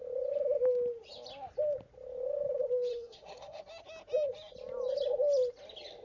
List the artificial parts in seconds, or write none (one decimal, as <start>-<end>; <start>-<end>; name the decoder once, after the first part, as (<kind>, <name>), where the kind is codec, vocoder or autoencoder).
2.9-3.6 (codec, SNAC)